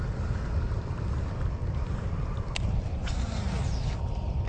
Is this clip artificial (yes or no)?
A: no